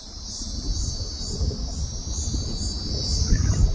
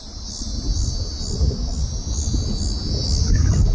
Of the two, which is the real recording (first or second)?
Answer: second